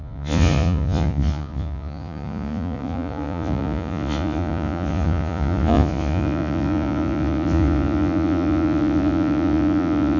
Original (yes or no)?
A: no